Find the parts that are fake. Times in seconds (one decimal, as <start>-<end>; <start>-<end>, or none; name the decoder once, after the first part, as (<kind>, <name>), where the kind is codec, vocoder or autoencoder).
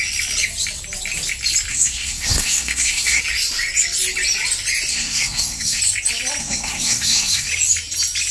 1.7-3.2 (codec, SNAC); 4.9-5.8; 6.4-7.5